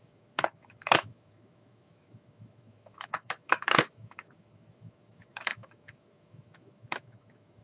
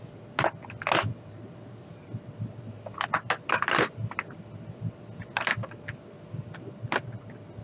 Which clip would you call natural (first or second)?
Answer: second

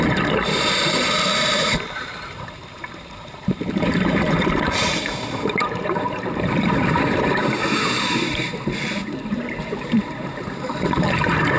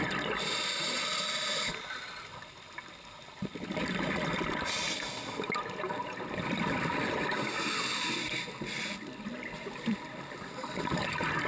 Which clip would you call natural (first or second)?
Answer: second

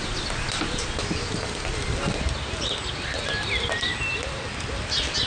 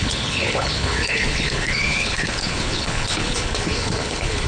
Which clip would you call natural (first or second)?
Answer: first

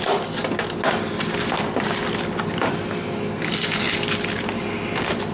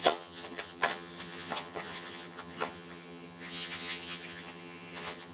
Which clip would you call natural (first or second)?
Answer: first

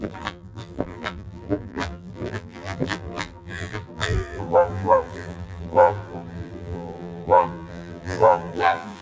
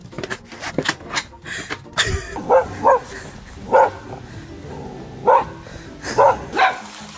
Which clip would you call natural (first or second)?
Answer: second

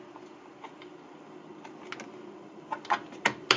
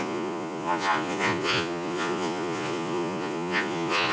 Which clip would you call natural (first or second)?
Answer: first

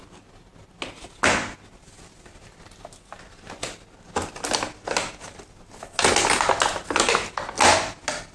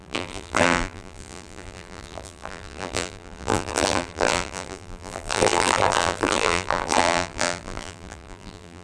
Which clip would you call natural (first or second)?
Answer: first